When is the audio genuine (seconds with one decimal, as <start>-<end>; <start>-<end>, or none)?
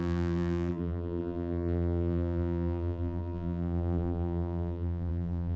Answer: none